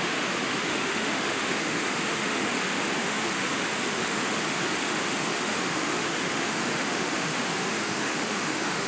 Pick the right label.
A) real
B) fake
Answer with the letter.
B